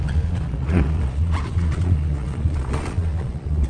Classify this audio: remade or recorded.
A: remade